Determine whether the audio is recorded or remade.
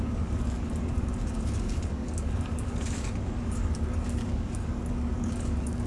remade